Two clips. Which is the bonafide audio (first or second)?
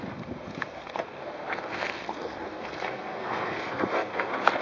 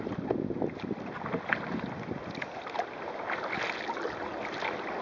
second